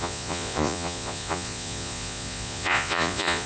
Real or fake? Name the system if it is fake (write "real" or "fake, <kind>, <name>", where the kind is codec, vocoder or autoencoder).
fake, vocoder, Vocos